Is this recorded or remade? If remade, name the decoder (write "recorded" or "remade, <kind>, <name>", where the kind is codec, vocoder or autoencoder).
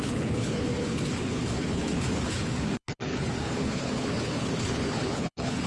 remade, codec, HILCodec